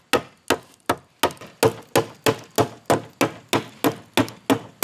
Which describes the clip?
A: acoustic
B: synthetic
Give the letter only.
A